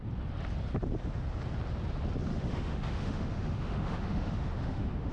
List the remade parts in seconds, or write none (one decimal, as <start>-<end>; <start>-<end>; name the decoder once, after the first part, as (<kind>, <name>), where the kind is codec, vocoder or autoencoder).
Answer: 2.3-5.1 (autoencoder, DAC-VAE)